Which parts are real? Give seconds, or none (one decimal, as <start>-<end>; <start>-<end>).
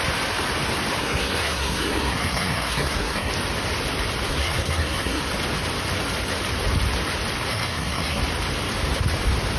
0.0-1.0; 3.3-4.3; 5.2-7.5; 8.2-9.6